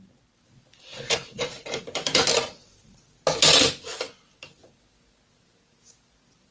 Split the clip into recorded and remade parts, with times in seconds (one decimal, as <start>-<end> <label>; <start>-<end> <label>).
0.0-0.9 recorded; 0.9-3.0 remade; 3.0-6.5 recorded